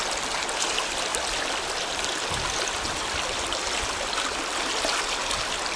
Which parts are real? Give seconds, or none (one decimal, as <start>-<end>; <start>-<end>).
0.0-1.1; 4.6-5.8